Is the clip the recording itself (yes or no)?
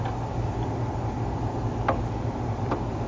yes